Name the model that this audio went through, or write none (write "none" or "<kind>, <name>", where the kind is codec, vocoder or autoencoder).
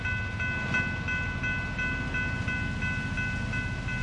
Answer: none